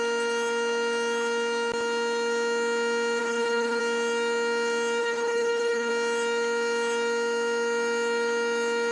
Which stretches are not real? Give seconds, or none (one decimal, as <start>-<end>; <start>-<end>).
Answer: 3.2-3.8; 5.0-5.9